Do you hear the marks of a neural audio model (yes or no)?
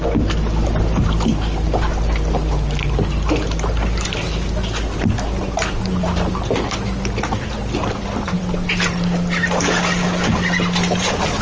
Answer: no